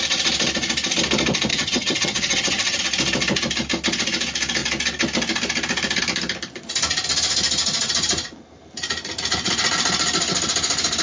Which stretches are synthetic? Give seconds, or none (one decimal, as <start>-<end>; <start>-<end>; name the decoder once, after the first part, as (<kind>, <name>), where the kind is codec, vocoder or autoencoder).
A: 1.5-2.8 (vocoder, HiFi-GAN)